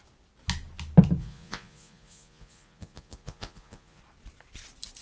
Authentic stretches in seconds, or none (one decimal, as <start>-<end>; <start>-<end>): 0.0-1.2; 4.0-5.0